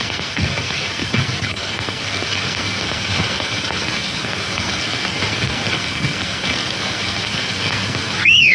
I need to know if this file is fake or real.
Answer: fake